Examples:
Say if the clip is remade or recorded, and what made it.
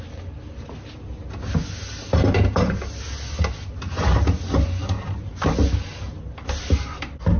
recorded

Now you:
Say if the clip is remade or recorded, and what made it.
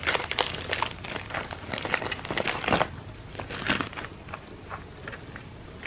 recorded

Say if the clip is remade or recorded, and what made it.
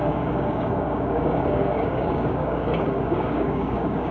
remade, codec, DAC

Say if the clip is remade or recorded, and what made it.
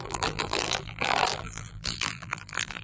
remade, vocoder, BigVGAN v2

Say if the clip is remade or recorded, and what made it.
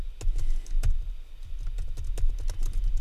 recorded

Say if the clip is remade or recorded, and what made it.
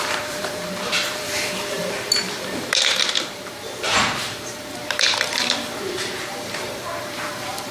remade, vocoder, BigVGAN v2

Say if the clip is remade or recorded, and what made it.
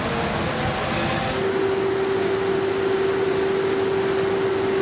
recorded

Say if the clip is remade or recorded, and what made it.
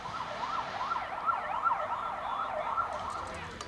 recorded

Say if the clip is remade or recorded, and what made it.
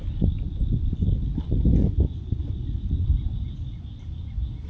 recorded